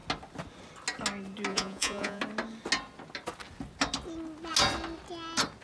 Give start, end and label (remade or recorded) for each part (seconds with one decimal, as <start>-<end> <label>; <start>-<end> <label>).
0.0-1.5 recorded; 1.5-2.2 remade; 2.2-5.6 recorded